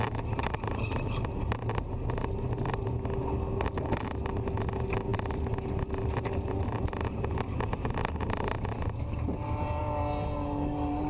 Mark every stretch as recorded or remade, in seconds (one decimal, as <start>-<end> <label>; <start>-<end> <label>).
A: 0.0-5.1 recorded; 5.1-7.4 remade; 7.4-11.1 recorded